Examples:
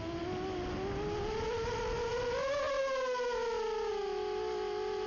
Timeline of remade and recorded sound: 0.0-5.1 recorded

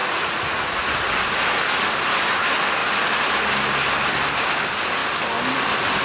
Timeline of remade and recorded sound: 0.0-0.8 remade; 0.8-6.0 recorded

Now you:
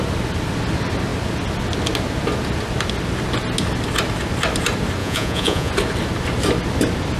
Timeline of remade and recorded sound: 0.0-5.0 recorded; 5.0-5.7 remade; 5.7-7.2 recorded

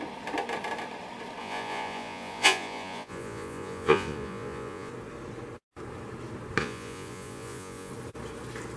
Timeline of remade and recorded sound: 0.0-1.4 recorded; 1.4-4.9 remade; 4.9-6.6 recorded; 6.6-7.9 remade; 7.9-8.8 recorded